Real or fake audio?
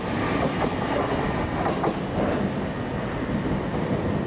real